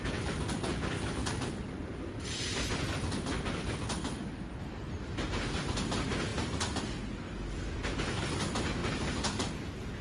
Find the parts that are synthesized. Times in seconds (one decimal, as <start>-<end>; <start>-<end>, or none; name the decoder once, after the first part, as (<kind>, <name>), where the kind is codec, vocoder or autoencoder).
1.2-2.8 (vocoder, BigVGAN v2); 6.3-6.8; 8.8-9.5